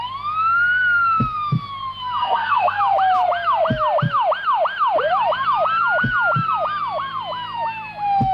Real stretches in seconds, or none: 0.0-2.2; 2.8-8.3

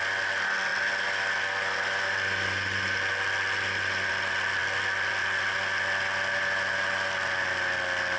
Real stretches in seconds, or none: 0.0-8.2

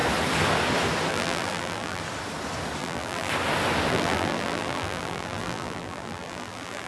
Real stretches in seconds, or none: 0.0-1.1; 2.0-2.8; 3.3-3.9

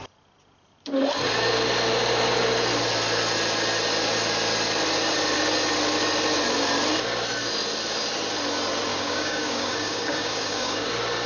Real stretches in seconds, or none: 0.0-8.9; 10.9-11.3

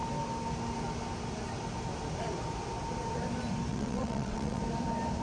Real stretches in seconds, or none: 0.0-3.7; 4.6-5.2

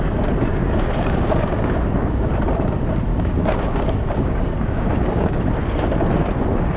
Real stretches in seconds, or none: 0.0-0.5; 2.3-3.1; 5.4-6.8

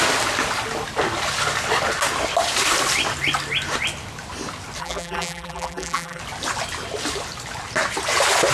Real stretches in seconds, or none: 0.0-4.8; 6.2-8.5